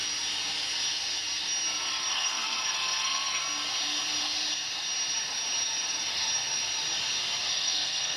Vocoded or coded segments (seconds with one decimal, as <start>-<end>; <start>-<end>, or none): 2.1-3.4; 7.5-8.2